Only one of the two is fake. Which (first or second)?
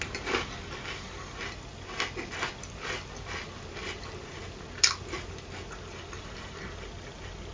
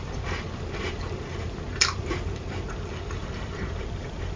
second